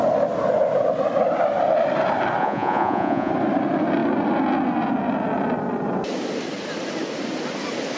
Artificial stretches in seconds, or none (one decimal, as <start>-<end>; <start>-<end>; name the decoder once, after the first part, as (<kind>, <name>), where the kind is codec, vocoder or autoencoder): 2.4-3.3 (vocoder, Vocos)